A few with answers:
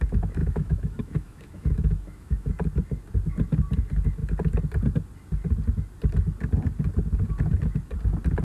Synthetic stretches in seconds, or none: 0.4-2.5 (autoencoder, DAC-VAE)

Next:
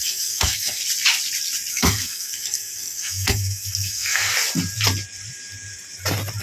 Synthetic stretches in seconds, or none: 0.0-0.8 (codec, SNAC); 1.7-4.3

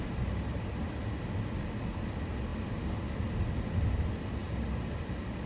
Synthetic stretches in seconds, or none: none

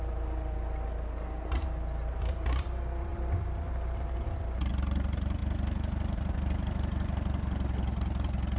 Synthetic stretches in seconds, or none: none

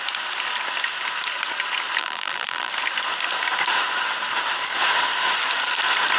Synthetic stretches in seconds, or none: 2.0-2.7 (vocoder, BigVGAN v2)

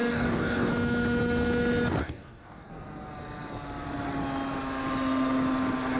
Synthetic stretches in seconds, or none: 0.0-0.7 (codec, DAC); 2.0-2.7

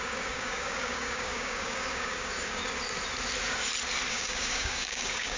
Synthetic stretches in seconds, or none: 0.0-2.6 (codec, DAC); 4.1-5.4